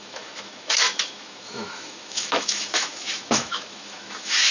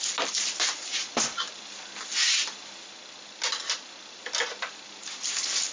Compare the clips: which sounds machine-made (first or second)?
first